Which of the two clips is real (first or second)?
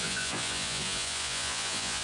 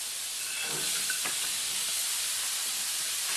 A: second